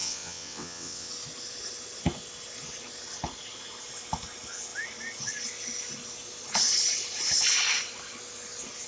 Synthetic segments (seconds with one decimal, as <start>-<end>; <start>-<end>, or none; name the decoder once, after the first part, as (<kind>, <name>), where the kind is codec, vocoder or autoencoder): 0.0-1.1 (vocoder, WaveNeXt)